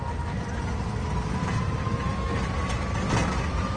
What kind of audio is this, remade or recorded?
recorded